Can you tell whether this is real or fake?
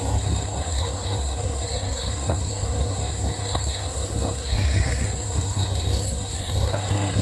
fake